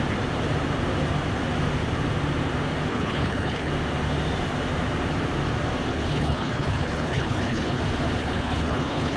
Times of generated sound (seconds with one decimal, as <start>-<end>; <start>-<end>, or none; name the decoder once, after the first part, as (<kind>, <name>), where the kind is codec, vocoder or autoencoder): 2.9-3.7 (codec, HILCodec); 5.9-7.8; 8.2-9.2